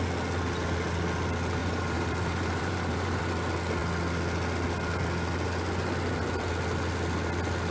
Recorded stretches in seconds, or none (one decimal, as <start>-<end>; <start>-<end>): 0.0-1.6; 3.2-7.7